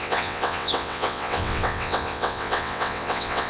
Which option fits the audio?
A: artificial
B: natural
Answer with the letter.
A